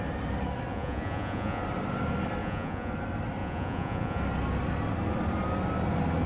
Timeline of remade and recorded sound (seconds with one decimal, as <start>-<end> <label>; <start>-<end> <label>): 0.0-0.7 recorded; 0.7-1.6 remade; 1.6-2.4 recorded; 2.4-2.9 remade; 2.9-3.4 recorded; 3.4-4.2 remade; 4.2-6.3 recorded